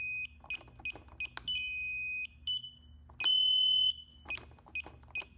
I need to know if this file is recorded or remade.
recorded